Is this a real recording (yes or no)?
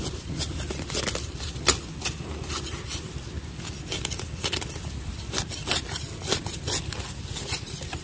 yes